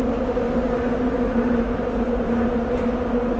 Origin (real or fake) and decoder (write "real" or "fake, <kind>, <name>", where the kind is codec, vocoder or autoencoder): real